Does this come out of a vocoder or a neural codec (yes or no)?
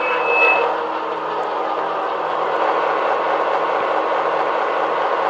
no